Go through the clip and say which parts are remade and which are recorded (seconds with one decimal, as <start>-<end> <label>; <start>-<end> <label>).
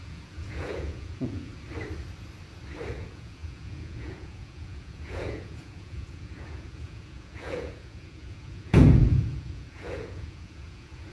0.0-1.5 remade; 1.5-2.9 recorded; 2.9-11.1 remade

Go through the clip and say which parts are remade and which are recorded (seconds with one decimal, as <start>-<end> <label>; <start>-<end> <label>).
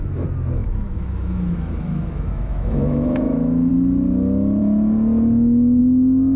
0.0-0.6 recorded; 0.6-3.7 remade; 3.7-6.4 recorded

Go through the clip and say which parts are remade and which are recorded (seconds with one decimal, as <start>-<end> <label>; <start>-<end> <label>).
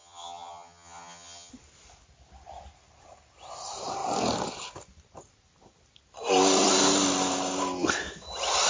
0.0-1.5 remade; 1.5-8.7 recorded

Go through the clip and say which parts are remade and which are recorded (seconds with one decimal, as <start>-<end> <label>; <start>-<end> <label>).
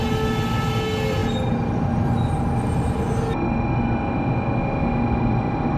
0.0-5.8 recorded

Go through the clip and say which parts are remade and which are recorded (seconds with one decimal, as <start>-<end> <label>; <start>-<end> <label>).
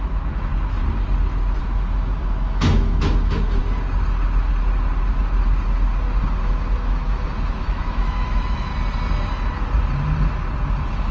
0.0-0.5 remade; 0.5-1.6 recorded; 1.6-3.6 remade; 3.6-6.2 recorded; 6.2-8.7 remade; 8.7-11.1 recorded